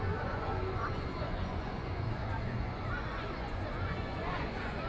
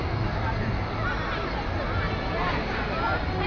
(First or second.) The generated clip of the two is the first